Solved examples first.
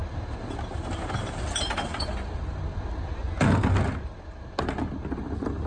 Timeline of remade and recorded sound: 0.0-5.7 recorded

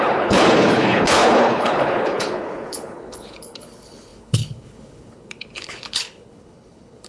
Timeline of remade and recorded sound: 0.0-7.1 remade

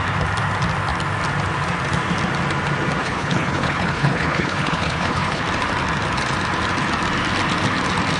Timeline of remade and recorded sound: 0.0-3.0 recorded; 3.0-5.4 remade; 5.4-8.2 recorded

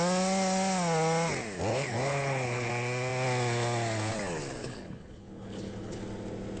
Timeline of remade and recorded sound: 0.0-1.7 recorded; 1.7-2.7 remade; 2.7-4.6 recorded; 4.6-6.0 remade; 6.0-6.6 recorded

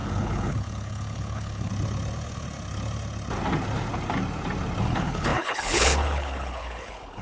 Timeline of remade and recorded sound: 0.0-1.7 remade; 1.7-4.8 recorded; 4.8-7.2 remade